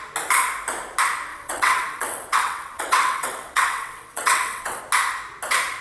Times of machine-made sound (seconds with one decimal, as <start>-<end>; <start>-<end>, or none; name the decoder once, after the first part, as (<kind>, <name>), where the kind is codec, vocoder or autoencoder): 1.3-4.8 (vocoder, WaveNeXt)